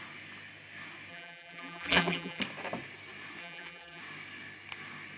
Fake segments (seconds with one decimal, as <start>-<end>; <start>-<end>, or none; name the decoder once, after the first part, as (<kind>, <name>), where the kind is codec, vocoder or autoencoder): 1.1-2.4 (vocoder, BigVGAN v2); 3.4-4.0